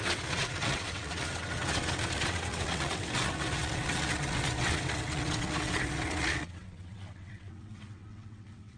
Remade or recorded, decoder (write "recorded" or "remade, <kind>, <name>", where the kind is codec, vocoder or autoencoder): remade, vocoder, WaveNeXt